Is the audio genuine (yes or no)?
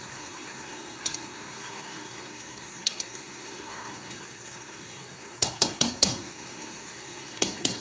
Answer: no